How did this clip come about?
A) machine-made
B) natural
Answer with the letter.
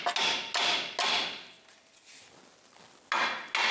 B